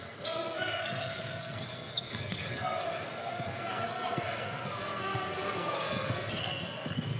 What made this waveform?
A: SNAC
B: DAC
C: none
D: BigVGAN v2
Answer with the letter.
A